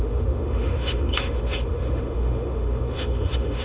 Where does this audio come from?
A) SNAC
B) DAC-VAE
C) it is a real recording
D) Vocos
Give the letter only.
B